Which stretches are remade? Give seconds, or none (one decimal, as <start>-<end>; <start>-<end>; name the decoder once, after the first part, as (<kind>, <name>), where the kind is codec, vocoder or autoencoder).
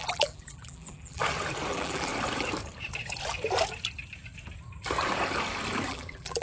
0.0-1.2 (vocoder, BigVGAN v2); 1.7-2.1; 5.9-6.4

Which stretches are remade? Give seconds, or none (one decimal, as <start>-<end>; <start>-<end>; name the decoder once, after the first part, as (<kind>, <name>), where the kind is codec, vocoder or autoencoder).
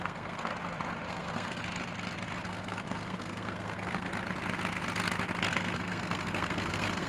0.0-0.5 (codec, SNAC); 1.1-1.6; 2.4-4.1; 5.5-7.1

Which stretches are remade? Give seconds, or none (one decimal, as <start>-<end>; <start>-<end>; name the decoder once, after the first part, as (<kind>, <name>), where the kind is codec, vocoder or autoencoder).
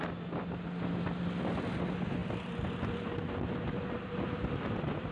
none